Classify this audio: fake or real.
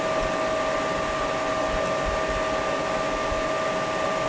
real